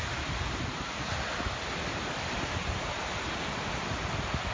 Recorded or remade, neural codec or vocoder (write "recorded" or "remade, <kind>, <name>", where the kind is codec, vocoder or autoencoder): recorded